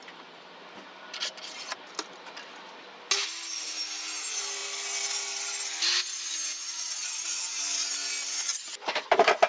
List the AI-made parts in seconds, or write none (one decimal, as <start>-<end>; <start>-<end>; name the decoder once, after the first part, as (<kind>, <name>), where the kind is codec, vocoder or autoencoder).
none